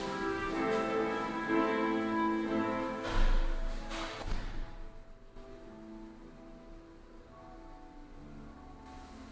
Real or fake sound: real